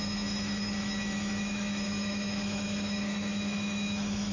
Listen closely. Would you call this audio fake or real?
fake